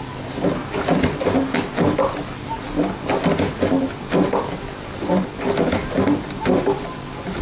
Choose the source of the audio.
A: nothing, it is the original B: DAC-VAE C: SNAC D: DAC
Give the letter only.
A